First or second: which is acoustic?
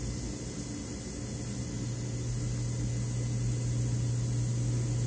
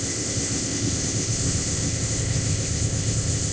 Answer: first